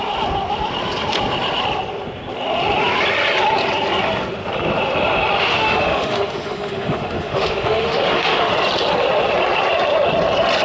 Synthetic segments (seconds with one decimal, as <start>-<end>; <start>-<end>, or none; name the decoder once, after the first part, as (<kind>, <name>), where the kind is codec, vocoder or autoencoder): 5.4-8.5 (autoencoder, DAC-VAE)